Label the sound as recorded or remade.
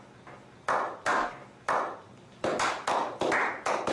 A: recorded